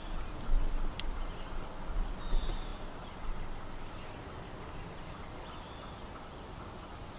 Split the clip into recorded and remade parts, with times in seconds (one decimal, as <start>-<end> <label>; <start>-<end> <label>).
0.0-7.2 recorded